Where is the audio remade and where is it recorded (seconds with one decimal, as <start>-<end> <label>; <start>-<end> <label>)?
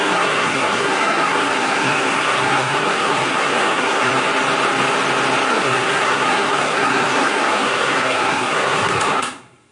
0.0-4.1 remade; 4.1-5.5 recorded; 5.5-9.7 remade